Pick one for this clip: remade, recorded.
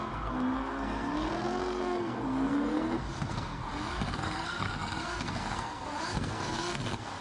remade